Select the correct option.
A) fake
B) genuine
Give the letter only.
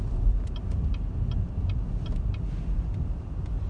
B